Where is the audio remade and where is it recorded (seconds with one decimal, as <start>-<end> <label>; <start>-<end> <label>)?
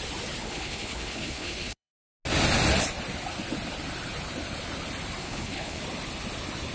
0.0-0.4 recorded; 0.4-1.9 remade; 1.9-5.2 recorded; 5.2-5.8 remade; 5.8-6.7 recorded